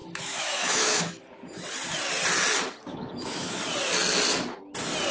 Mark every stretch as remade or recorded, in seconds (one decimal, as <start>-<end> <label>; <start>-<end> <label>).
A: 0.0-1.2 remade; 1.2-2.9 recorded; 2.9-3.6 remade; 3.6-5.1 recorded